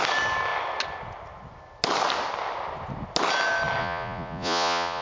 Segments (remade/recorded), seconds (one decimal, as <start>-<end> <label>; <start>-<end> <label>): 0.0-3.8 recorded; 3.8-5.0 remade